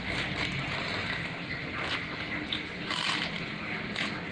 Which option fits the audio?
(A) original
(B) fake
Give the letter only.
A